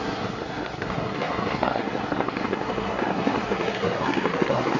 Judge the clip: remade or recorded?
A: remade